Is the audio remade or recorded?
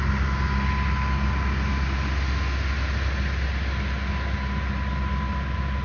recorded